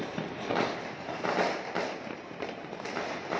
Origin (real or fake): real